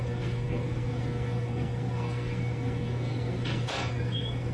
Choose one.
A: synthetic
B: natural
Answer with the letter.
A